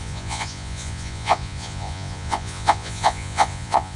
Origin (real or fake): fake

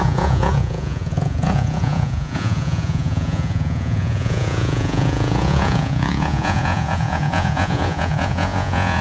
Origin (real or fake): fake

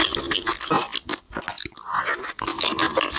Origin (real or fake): real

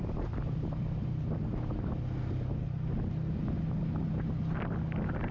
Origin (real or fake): real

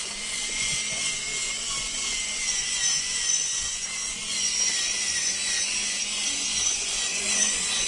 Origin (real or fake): fake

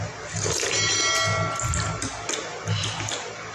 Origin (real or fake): real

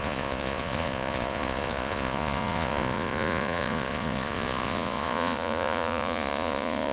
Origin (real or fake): fake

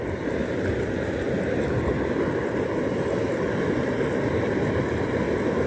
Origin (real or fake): real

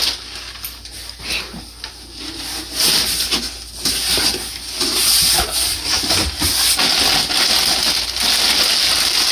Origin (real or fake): real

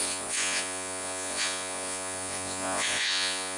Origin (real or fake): fake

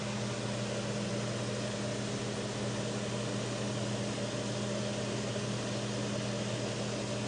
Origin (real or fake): real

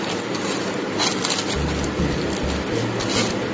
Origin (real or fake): real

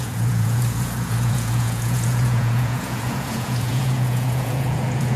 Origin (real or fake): fake